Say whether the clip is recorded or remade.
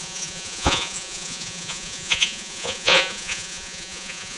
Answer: remade